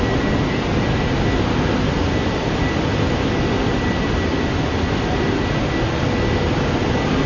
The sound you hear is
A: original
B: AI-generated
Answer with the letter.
A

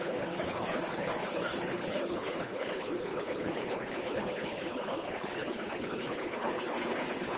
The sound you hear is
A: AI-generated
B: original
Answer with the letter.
A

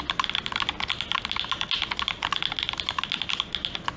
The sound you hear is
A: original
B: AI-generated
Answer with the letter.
A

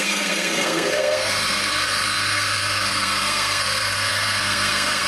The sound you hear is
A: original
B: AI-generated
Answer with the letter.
B